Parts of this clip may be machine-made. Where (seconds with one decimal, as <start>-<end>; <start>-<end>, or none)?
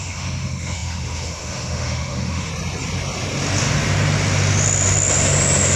0.0-2.5